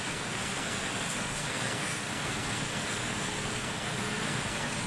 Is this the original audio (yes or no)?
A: no